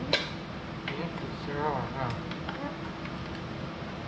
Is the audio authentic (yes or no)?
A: yes